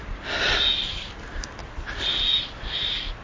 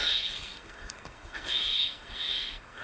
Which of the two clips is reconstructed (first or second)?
second